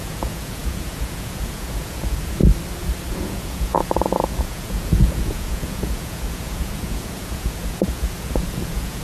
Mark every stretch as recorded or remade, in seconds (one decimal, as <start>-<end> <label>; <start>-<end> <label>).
0.0-2.4 remade; 2.4-3.1 recorded; 3.1-9.0 remade